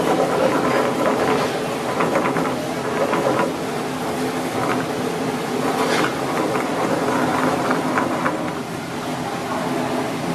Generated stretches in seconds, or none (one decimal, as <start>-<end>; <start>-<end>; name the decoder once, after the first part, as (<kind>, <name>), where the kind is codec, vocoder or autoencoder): none